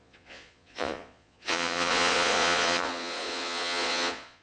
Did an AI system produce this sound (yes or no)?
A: yes